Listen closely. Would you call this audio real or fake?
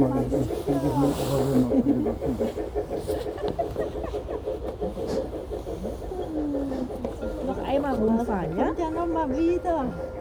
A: real